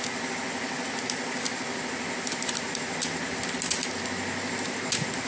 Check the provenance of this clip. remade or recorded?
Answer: recorded